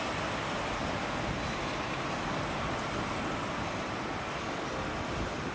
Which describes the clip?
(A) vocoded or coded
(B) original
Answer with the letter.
B